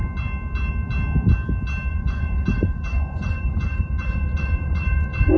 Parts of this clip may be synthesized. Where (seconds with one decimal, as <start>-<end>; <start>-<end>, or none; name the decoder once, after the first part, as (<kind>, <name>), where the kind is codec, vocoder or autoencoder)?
1.9-5.4 (vocoder, Vocos)